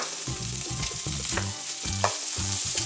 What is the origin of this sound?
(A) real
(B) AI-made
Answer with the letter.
B